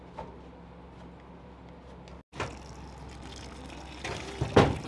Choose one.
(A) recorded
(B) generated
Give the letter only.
A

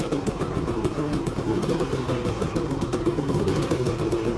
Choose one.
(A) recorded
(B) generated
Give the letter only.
B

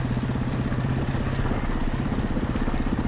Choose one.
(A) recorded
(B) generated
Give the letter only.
A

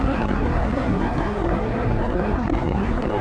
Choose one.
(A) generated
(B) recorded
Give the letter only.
A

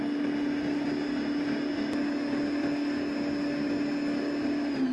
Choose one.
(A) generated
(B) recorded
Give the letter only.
B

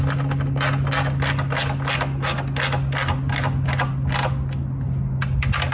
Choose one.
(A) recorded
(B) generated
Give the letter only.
A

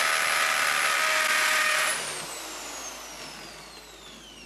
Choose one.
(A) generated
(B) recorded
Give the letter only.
B